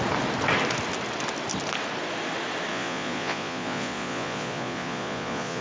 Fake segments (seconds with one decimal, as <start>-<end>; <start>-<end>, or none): 2.7-5.6